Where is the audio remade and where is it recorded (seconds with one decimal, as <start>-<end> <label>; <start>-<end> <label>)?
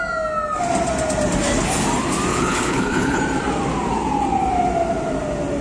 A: 0.0-2.3 recorded; 2.3-3.2 remade; 3.2-5.6 recorded